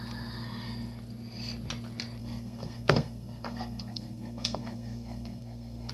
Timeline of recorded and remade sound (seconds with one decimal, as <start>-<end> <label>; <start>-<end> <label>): 0.0-2.2 recorded; 2.2-5.9 remade